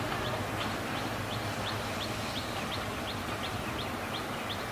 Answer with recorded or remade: recorded